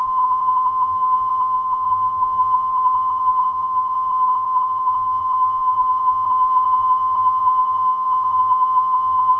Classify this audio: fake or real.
fake